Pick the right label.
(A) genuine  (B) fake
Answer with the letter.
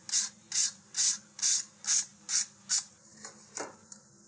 A